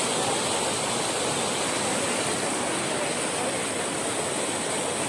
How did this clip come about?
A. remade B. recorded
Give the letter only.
B